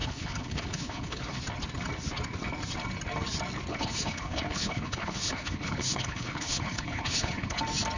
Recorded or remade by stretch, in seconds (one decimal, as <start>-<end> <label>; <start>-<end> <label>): 0.0-1.4 remade; 1.4-3.7 recorded; 3.7-7.6 remade; 7.6-8.0 recorded